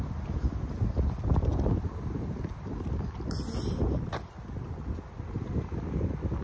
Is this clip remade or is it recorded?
recorded